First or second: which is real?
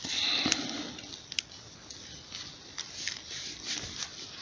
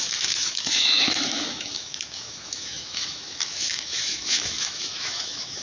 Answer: first